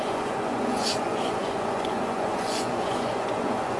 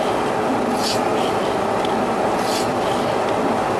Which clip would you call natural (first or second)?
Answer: second